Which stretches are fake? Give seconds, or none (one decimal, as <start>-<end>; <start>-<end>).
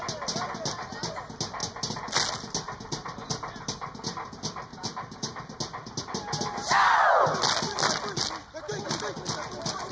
none